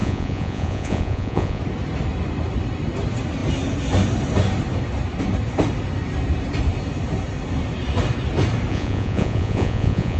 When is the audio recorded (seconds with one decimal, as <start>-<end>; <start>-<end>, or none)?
1.6-8.7